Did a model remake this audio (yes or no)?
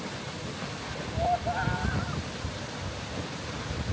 no